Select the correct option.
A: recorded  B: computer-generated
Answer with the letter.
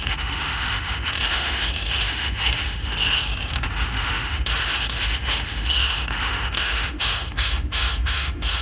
B